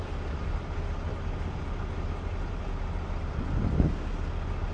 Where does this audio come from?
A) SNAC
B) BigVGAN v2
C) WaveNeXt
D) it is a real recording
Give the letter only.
D